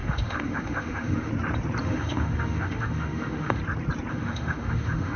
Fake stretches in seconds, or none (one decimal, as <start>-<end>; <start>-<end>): 0.0-1.3; 1.8-3.6; 4.1-5.2